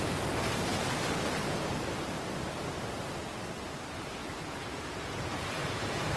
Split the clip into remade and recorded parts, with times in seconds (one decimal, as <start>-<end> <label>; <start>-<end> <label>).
0.0-4.2 recorded; 4.2-6.2 remade